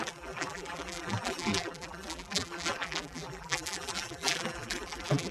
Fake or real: fake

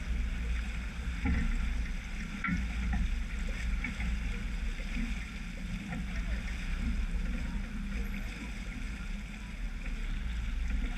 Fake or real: real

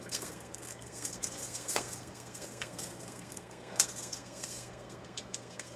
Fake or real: fake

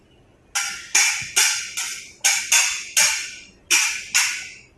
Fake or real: real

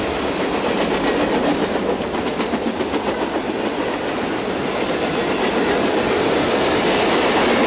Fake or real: real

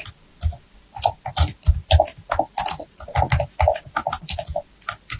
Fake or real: real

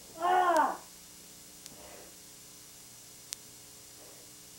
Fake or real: real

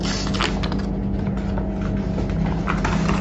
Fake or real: real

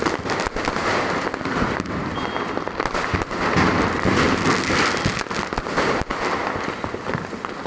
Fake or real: real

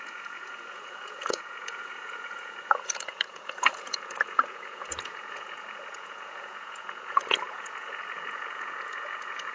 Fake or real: fake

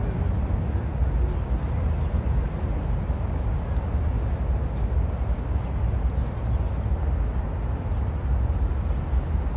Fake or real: real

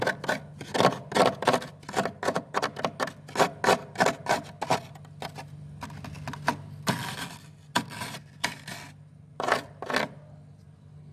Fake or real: real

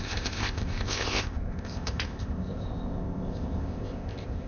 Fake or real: fake